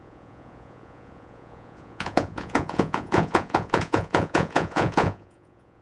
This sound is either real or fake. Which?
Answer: fake